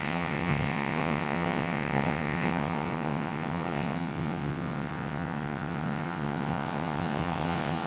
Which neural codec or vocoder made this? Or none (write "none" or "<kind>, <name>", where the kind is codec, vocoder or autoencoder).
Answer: vocoder, WaveNeXt